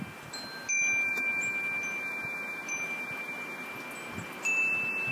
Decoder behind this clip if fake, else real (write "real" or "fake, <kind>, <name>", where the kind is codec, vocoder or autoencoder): real